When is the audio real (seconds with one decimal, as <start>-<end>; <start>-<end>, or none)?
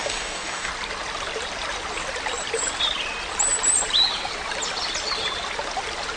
0.7-6.2